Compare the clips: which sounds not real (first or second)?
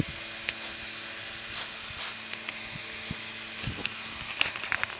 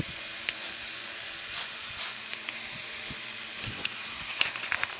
second